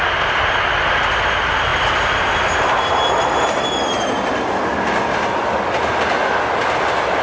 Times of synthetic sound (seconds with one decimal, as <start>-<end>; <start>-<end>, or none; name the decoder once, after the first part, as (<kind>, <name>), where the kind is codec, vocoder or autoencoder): none